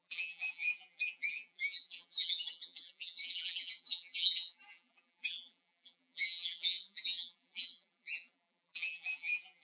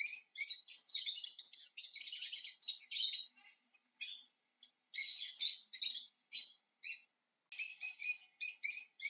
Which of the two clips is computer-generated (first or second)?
first